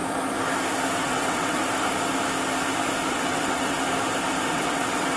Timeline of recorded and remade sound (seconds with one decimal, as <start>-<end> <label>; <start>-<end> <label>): 0.0-1.0 recorded; 1.0-1.6 remade; 1.6-3.1 recorded; 3.1-3.8 remade; 3.8-4.5 recorded; 4.5-5.2 remade